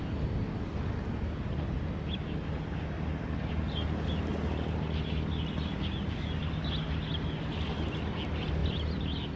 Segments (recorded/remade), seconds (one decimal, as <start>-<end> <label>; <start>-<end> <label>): 0.0-9.4 recorded